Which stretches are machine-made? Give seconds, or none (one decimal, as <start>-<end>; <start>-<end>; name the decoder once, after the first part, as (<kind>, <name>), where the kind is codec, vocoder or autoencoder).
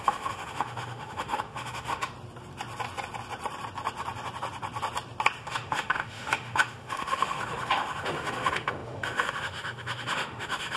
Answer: 0.0-2.1 (autoencoder, DAC-VAE); 5.4-10.8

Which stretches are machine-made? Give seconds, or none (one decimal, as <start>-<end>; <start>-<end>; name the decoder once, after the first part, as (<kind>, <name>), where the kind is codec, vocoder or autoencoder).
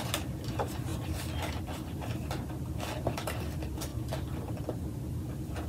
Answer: none